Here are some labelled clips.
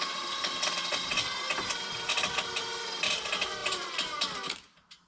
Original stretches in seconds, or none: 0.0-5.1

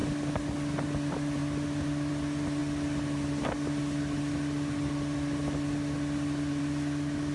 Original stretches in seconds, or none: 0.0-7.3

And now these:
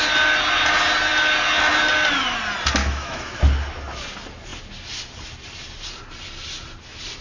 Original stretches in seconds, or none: 0.0-2.8; 3.4-7.2

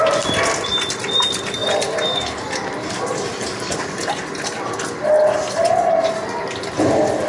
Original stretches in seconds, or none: 0.0-7.3

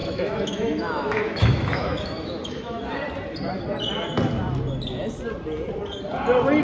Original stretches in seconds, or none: 2.8-6.6

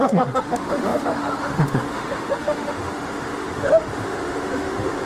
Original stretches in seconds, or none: none

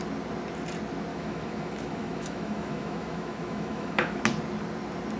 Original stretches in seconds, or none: 0.0-1.1; 4.2-5.2